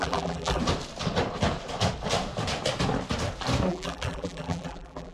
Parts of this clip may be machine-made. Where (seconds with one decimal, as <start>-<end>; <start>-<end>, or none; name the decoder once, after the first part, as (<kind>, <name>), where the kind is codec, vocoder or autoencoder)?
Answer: 0.0-0.6 (vocoder, BigVGAN v2); 3.7-5.1